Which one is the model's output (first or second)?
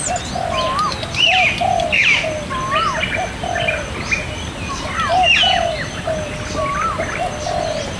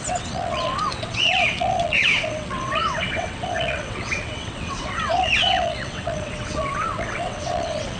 second